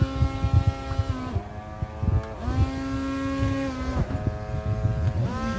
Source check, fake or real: real